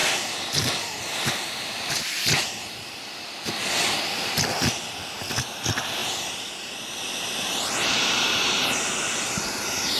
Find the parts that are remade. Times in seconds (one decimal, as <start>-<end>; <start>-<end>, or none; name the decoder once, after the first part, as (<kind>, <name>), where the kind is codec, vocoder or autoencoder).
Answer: 0.0-3.6 (vocoder, BigVGAN v2); 6.0-6.5